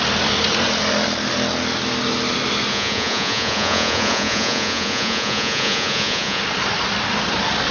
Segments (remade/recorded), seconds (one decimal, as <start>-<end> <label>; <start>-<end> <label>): 0.0-2.7 recorded; 2.7-6.4 remade; 6.4-7.7 recorded